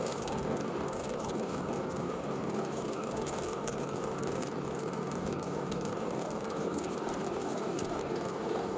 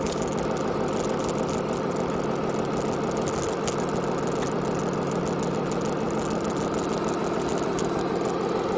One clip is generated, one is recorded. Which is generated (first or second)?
first